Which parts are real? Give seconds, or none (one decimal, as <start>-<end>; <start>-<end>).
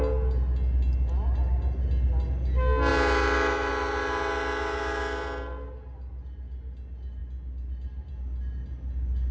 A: 0.0-9.3